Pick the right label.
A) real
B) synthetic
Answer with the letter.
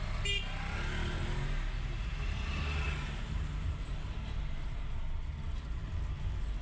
A